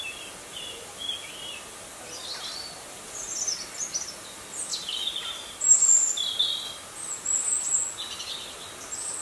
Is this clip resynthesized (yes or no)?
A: no